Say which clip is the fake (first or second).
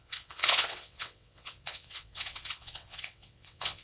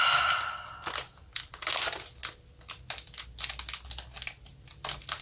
first